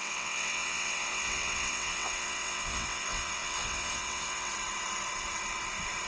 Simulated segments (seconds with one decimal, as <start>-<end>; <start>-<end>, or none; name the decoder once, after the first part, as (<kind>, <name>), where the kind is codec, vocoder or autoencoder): 0.0-4.5 (vocoder, WaveNeXt)